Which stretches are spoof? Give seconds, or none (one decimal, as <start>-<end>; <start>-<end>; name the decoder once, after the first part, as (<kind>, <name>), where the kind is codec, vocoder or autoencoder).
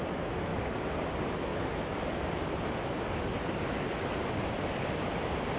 none